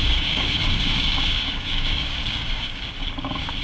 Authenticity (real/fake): fake